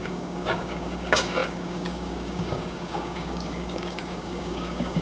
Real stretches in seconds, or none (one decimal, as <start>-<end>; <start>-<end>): none